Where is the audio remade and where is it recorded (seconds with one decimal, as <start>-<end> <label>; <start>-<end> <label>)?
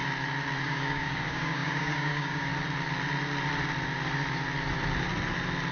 0.0-0.6 recorded; 0.6-2.5 remade; 2.5-5.7 recorded